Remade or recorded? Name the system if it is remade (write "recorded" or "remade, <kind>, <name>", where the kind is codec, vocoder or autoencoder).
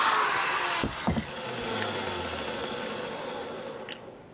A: recorded